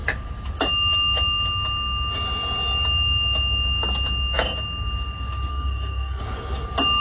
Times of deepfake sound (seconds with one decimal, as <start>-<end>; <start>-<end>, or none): 5.5-6.2